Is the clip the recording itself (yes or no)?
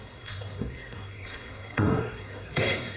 no